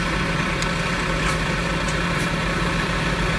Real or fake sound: fake